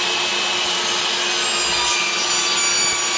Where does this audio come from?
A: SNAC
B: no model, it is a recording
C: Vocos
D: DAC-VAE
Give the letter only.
B